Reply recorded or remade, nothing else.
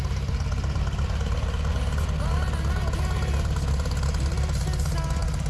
recorded